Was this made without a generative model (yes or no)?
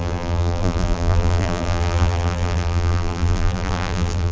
no